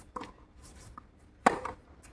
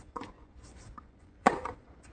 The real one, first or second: first